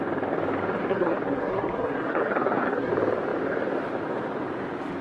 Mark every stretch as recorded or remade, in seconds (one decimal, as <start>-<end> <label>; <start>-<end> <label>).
0.0-0.9 recorded; 0.9-2.9 remade; 2.9-5.0 recorded